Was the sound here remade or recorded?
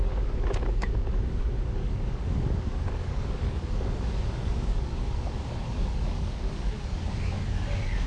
remade